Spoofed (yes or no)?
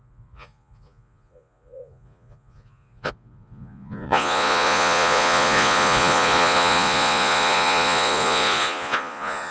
yes